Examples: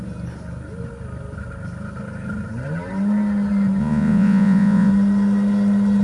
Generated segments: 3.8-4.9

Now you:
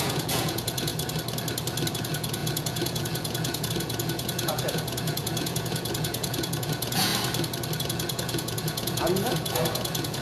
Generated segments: 0.0-0.9; 1.9-7.1; 7.8-10.2

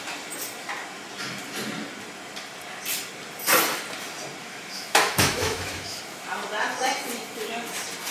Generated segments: 4.4-6.0

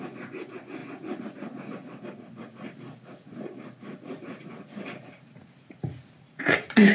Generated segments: 0.0-6.9